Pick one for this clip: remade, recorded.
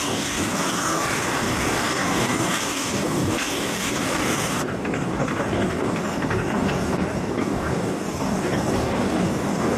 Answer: remade